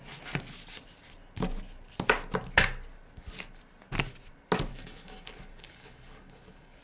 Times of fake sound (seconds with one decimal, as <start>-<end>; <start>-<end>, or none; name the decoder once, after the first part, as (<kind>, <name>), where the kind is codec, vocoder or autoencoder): 4.7-6.8 (codec, DAC)